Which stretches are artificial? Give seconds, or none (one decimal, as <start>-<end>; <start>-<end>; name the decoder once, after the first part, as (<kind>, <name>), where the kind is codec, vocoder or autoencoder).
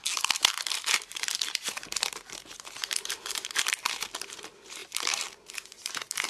0.4-3.9 (vocoder, BigVGAN v2); 4.8-6.3